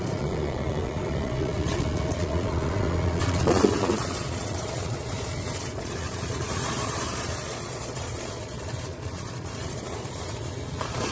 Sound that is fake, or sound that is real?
fake